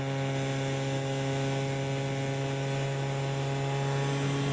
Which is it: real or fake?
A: real